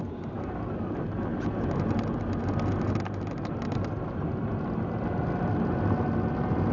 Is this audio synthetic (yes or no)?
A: no